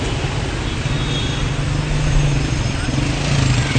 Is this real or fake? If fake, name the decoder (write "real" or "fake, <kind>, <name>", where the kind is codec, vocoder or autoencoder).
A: real